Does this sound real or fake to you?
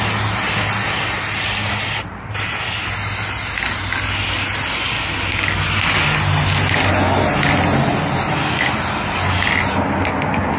real